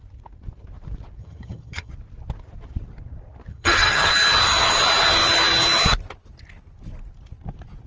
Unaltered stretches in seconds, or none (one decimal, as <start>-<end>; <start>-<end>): 0.0-1.2; 1.9-3.5; 4.1-7.9